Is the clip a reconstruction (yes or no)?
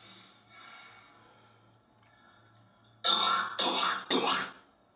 no